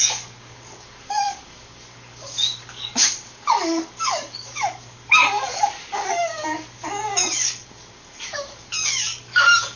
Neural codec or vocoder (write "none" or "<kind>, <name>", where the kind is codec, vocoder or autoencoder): codec, DAC